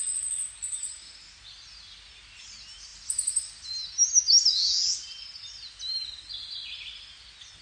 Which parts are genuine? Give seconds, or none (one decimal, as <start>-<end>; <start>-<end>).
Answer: 0.0-7.6